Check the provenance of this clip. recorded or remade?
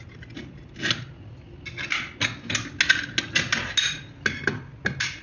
recorded